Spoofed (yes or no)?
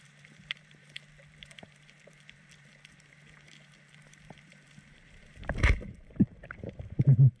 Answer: yes